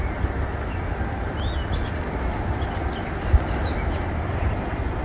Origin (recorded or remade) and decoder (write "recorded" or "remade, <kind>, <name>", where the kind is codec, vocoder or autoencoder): recorded